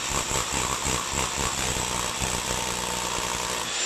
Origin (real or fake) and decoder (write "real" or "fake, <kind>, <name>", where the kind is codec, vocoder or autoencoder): real